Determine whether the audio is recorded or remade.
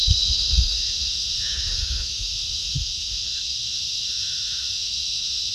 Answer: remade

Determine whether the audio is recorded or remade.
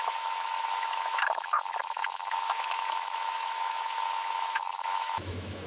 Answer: remade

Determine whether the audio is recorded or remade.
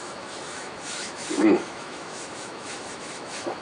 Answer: remade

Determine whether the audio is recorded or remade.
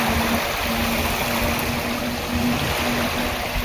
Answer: recorded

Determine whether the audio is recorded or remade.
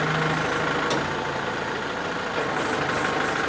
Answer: recorded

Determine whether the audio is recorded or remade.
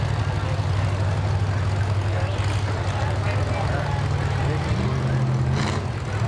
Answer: recorded